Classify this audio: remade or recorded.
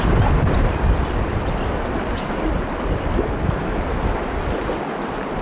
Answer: recorded